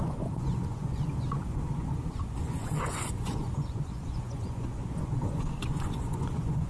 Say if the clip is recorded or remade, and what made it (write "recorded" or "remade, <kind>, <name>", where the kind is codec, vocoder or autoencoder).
remade, vocoder, Vocos